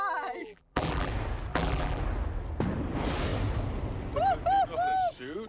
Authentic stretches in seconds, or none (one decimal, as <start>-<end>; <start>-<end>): 0.0-0.4; 1.1-1.5; 2.0-5.5